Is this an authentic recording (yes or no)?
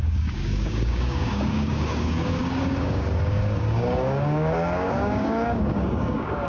no